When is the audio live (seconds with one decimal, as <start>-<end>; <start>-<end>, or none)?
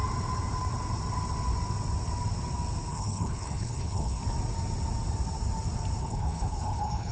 0.0-2.9; 4.2-6.0